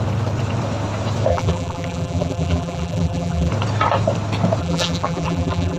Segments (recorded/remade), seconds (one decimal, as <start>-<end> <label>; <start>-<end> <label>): 0.0-1.3 recorded; 1.3-3.5 remade; 3.5-4.6 recorded; 4.6-5.8 remade